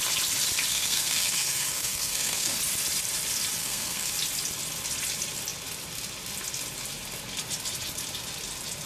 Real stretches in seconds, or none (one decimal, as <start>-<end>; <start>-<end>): 0.0-0.7; 2.6-3.6; 4.1-8.9